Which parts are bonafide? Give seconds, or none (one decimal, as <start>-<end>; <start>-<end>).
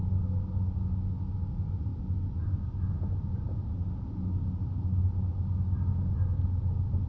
0.0-7.1